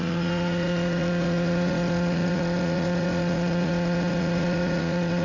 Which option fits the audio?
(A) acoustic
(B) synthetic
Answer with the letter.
B